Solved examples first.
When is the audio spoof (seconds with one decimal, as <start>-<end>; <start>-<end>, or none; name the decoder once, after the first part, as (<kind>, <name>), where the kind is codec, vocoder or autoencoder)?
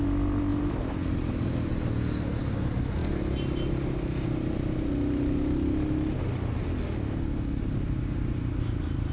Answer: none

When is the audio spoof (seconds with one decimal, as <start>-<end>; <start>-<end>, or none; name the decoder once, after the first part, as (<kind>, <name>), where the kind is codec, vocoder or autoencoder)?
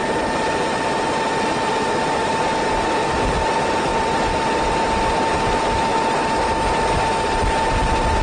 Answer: none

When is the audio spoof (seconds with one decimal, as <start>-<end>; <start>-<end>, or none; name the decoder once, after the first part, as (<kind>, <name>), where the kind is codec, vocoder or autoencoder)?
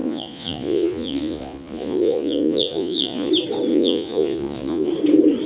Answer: 0.0-3.3 (vocoder, Vocos); 3.7-4.9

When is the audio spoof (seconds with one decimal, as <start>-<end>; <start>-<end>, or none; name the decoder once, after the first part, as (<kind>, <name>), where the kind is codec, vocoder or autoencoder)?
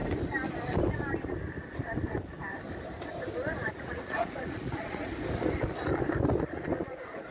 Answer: 3.7-5.1 (vocoder, Vocos); 6.4-7.3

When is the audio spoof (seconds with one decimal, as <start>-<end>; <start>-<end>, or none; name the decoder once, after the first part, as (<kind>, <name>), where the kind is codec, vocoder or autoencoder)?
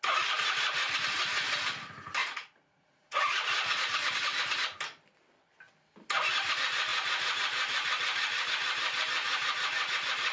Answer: 2.2-4.1 (vocoder, Vocos); 6.9-8.5; 9.2-9.9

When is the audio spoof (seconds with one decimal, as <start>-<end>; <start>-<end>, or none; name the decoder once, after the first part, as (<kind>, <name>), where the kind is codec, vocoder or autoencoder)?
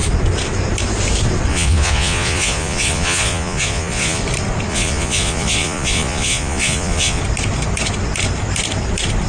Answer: 1.5-4.2 (vocoder, Vocos); 4.7-7.2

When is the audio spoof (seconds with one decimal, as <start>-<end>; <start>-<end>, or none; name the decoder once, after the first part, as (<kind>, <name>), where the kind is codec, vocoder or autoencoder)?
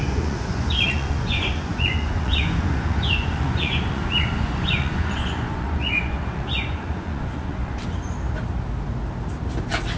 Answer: 0.0-7.8 (vocoder, Vocos)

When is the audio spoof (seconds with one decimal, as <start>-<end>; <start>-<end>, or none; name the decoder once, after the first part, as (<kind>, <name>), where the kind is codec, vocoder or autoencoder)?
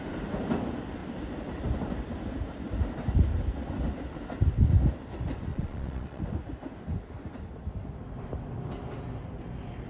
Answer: 5.5-6.2 (vocoder, Vocos)